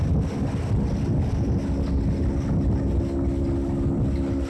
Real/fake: real